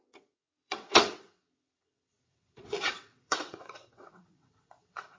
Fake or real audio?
fake